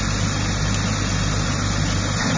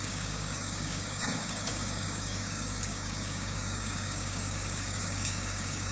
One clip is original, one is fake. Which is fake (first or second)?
second